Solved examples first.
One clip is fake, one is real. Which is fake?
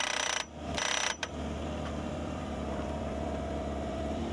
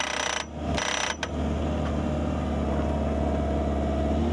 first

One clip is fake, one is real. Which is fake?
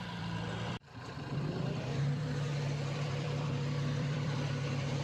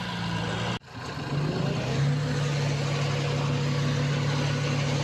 first